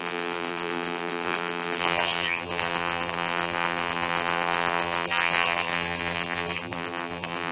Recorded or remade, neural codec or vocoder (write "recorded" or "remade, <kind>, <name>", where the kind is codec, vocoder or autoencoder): remade, vocoder, BigVGAN v2